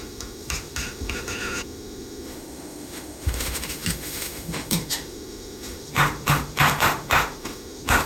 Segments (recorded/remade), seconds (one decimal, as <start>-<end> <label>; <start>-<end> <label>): 0.0-8.1 remade